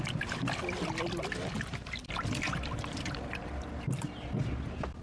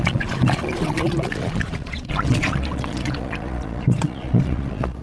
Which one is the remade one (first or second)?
second